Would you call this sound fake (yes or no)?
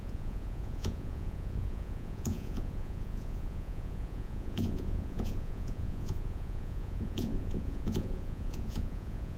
yes